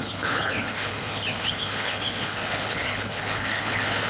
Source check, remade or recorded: remade